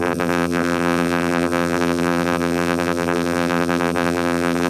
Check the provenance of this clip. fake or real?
fake